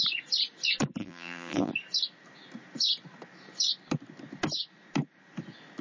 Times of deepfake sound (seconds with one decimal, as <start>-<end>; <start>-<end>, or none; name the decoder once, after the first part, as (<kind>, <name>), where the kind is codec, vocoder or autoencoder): 1.0-1.7 (vocoder, BigVGAN v2)